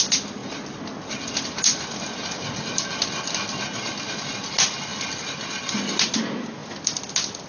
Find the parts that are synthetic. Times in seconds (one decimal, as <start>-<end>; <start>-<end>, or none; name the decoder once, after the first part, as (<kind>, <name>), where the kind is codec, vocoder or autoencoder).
none